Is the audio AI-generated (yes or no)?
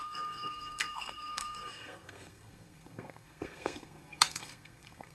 yes